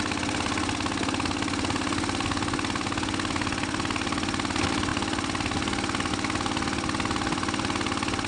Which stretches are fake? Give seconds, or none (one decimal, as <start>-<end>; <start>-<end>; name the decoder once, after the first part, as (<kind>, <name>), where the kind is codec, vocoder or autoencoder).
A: none